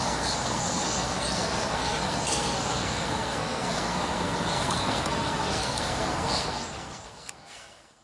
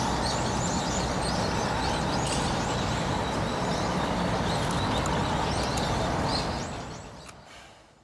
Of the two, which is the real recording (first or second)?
second